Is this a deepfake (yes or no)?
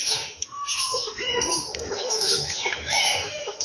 yes